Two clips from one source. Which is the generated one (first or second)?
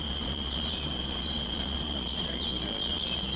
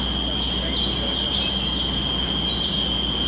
first